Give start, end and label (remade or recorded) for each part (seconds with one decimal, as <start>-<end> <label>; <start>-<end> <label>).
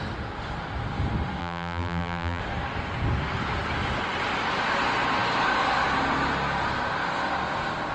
0.0-1.4 recorded; 1.4-2.4 remade; 2.4-7.9 recorded